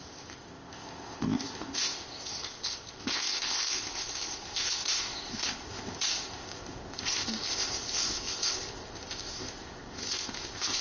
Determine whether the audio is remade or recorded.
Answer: remade